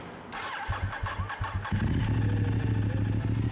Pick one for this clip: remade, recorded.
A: recorded